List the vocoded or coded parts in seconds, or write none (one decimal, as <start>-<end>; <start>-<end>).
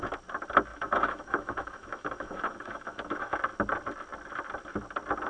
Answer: 0.7-3.4